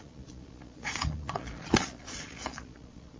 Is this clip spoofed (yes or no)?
yes